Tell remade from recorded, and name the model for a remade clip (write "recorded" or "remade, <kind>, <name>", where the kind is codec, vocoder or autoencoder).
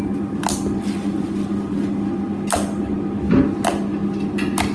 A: recorded